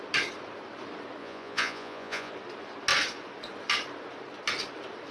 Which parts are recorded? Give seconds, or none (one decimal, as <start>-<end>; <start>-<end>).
0.0-1.2; 2.3-5.1